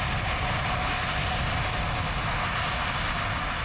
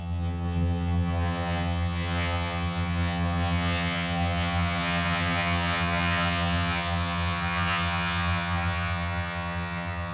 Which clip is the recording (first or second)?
first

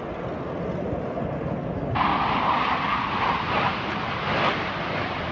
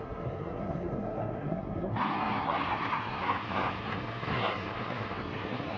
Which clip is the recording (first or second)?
first